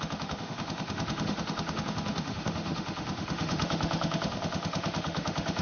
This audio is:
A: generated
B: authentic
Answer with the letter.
A